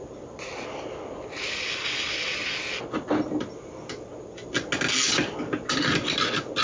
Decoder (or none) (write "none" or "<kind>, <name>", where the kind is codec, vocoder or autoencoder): none